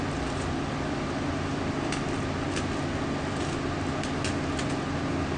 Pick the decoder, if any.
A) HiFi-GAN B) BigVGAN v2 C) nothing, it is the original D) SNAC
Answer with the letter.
C